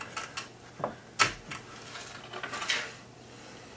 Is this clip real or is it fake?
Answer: real